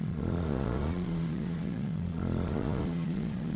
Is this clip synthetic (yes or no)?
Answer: yes